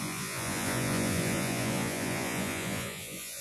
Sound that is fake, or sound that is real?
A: fake